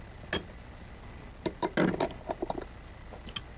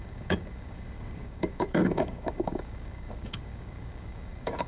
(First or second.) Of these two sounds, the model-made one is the second